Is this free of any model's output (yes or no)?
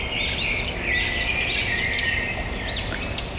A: yes